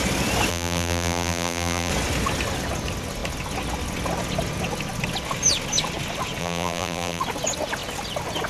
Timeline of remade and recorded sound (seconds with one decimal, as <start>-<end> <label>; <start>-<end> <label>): 0.0-0.5 recorded; 0.5-1.9 remade; 1.9-6.4 recorded; 6.4-7.2 remade; 7.2-8.5 recorded